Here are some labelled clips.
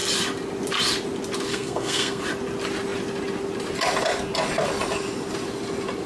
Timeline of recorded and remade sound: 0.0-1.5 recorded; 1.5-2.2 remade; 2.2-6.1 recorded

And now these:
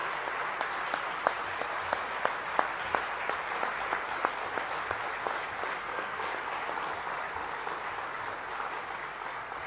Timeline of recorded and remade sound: 0.0-5.8 recorded; 5.8-6.3 remade; 6.3-9.7 recorded

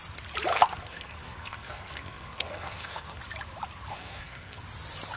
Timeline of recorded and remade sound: 0.0-0.5 recorded; 0.5-3.2 remade; 3.2-3.9 recorded; 3.9-4.6 remade; 4.6-5.2 recorded

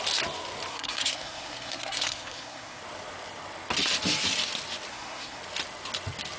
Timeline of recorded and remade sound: 0.0-0.7 recorded; 0.7-2.8 remade; 2.8-4.9 recorded; 4.9-5.4 remade; 5.4-6.4 recorded

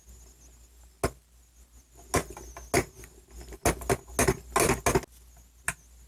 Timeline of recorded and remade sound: 0.0-6.1 recorded

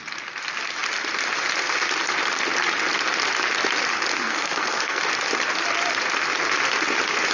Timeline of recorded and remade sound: 0.0-4.2 recorded; 4.2-5.0 remade; 5.0-7.3 recorded

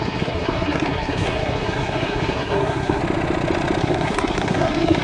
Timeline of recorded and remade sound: 0.0-3.0 remade; 3.0-3.8 recorded; 3.8-5.0 remade